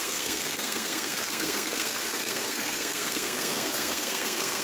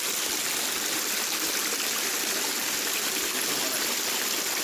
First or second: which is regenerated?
first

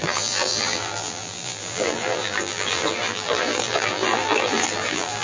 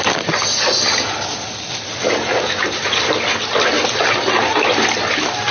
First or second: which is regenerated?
first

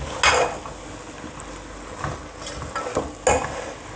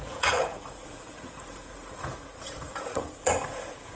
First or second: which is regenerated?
second